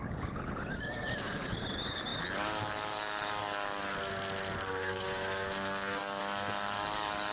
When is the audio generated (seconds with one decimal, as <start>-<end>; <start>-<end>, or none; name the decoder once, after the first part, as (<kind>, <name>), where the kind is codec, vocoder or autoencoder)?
4.8-6.2 (codec, DAC)